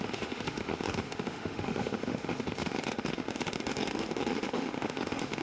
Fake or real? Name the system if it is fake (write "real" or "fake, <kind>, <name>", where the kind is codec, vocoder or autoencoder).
fake, autoencoder, DAC-VAE